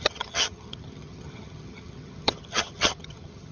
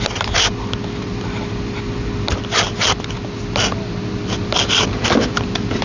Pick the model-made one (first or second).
first